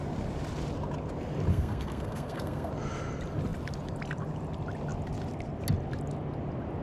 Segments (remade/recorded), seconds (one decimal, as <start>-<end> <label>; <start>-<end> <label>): 0.0-1.5 recorded; 1.5-2.7 remade; 2.7-6.8 recorded